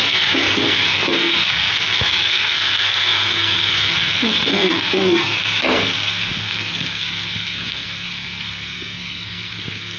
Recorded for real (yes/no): no